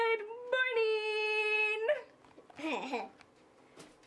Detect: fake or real real